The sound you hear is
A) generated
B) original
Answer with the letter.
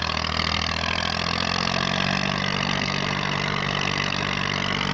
B